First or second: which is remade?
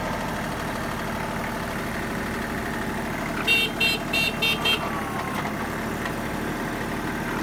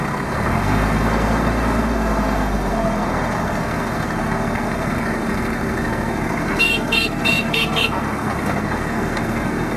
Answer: second